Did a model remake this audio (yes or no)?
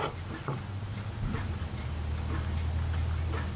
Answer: no